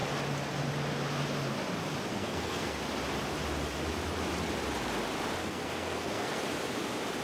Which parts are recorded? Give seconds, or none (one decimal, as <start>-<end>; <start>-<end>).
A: 0.0-2.1; 2.8-5.4; 6.4-7.2